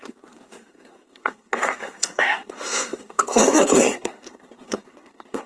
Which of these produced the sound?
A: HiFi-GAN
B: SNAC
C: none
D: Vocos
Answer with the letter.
B